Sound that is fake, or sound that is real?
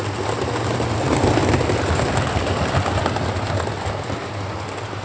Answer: real